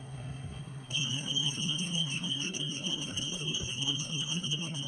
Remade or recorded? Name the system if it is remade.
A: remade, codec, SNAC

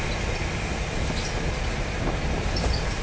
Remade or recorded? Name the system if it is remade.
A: recorded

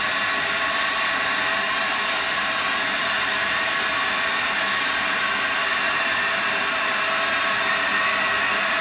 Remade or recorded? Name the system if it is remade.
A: recorded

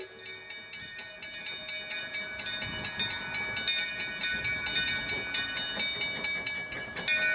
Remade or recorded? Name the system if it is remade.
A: recorded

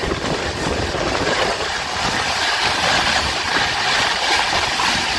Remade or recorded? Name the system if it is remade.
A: recorded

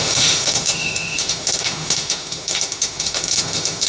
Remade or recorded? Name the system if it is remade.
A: remade, autoencoder, DAC-VAE